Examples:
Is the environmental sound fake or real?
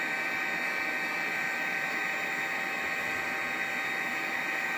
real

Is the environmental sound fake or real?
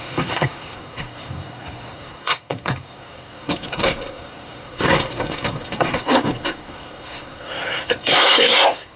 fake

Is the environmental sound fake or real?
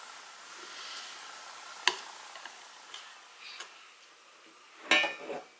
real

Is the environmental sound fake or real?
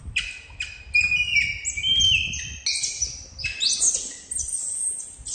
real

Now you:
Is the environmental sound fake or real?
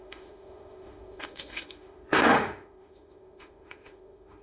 fake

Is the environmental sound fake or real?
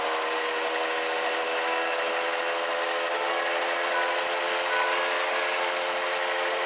real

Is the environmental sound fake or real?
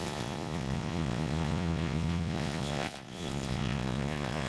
fake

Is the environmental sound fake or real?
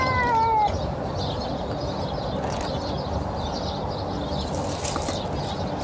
real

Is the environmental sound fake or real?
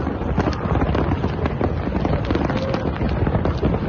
real